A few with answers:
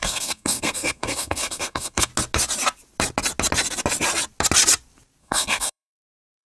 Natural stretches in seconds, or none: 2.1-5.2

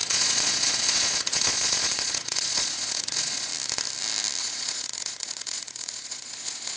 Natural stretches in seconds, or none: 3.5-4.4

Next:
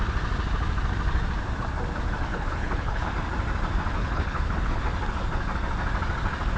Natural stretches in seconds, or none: 0.0-2.3; 3.1-4.0; 4.8-6.6

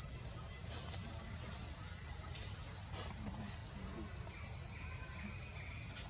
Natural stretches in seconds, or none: 0.0-6.1

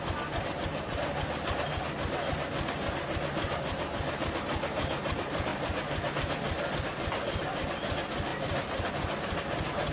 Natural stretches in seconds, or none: 0.0-0.7; 1.7-5.5; 6.1-8.3; 8.9-9.9